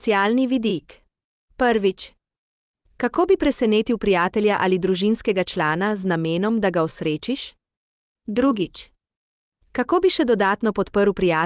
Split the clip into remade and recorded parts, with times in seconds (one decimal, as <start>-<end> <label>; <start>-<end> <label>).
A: 0.0-8.0 recorded; 8.0-9.0 remade; 9.0-11.5 recorded